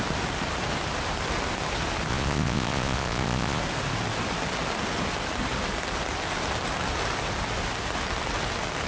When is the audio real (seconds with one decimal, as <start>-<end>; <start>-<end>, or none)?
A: 0.0-2.1; 3.6-8.9